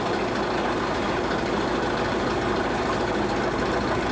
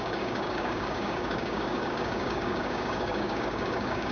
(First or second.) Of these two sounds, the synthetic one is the second